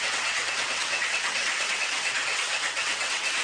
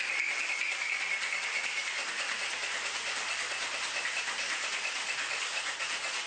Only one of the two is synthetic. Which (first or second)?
first